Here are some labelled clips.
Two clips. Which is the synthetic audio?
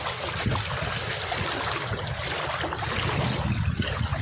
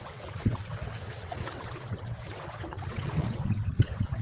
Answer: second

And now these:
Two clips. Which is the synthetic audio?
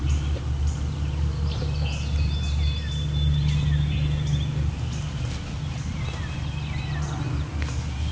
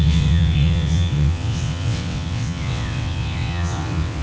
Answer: second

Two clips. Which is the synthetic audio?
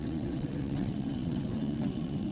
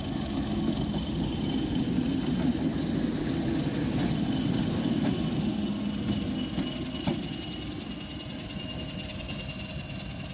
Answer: first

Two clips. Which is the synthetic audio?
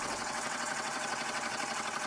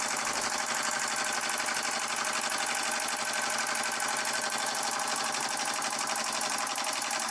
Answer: first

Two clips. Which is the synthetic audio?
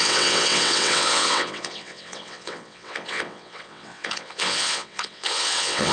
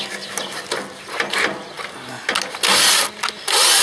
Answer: first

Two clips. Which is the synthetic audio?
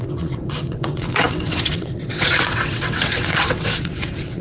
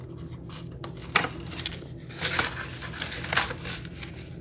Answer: first